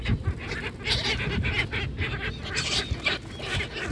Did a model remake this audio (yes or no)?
no